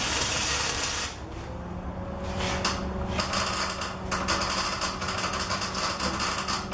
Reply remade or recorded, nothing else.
recorded